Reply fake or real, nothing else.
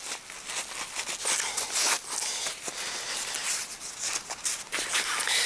real